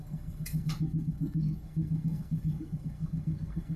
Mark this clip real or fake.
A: fake